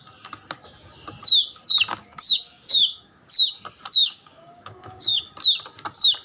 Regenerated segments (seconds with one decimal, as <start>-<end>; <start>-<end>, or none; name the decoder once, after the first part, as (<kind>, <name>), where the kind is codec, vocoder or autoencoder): 2.0-3.3 (codec, DAC); 4.0-5.2